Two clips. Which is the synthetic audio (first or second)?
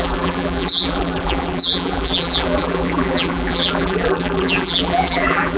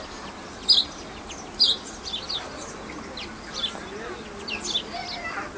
first